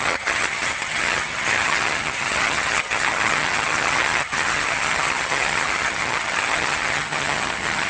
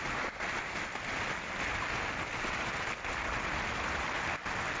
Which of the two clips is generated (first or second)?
first